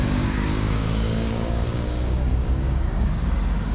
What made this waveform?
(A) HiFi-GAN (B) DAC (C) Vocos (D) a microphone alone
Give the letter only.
B